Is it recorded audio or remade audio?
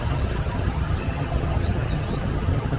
remade